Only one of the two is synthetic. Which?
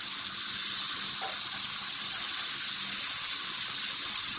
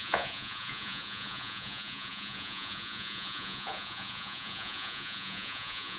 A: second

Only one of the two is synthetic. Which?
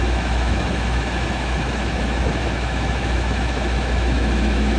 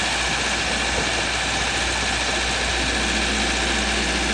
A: first